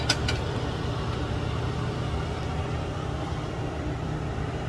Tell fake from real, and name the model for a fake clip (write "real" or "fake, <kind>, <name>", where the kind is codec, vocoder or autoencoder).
real